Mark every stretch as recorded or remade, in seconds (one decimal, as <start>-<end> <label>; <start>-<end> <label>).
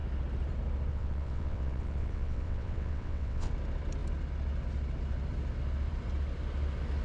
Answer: 0.0-0.9 recorded; 0.9-3.5 remade; 3.5-7.0 recorded